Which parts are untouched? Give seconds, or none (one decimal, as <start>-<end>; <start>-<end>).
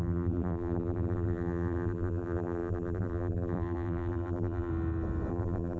4.7-5.3